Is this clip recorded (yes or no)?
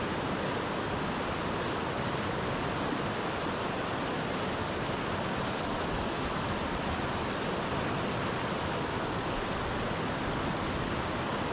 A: yes